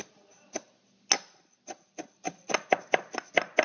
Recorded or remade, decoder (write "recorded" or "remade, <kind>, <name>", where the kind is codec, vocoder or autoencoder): recorded